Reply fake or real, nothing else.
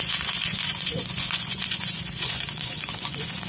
fake